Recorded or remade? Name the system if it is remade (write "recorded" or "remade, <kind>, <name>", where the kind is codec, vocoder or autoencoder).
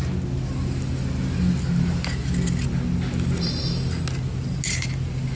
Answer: recorded